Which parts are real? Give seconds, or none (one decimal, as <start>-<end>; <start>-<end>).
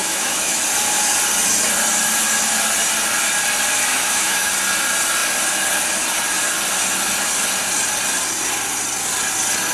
0.6-3.9; 4.5-9.7